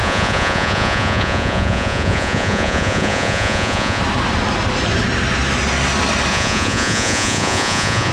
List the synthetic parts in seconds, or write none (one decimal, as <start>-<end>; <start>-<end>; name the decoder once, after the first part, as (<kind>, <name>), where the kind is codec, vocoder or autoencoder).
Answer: 0.0-4.0 (vocoder, Vocos); 6.3-8.1